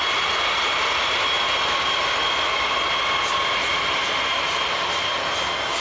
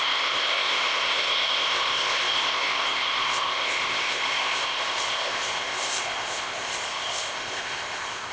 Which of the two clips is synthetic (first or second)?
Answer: second